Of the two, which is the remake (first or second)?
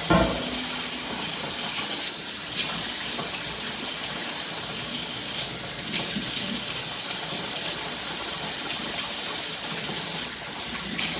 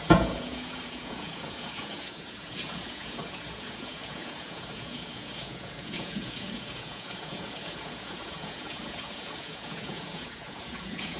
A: second